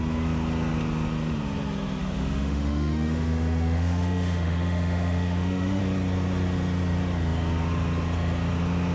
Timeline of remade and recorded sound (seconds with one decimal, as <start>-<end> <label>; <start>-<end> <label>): 0.0-2.0 recorded; 2.0-5.8 remade; 5.8-8.9 recorded